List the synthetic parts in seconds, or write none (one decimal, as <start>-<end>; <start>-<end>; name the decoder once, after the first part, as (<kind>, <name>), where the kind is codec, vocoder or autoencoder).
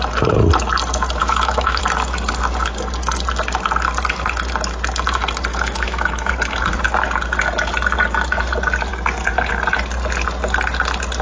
1.2-1.8 (autoencoder, DAC-VAE); 5.5-6.3